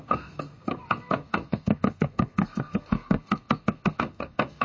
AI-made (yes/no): yes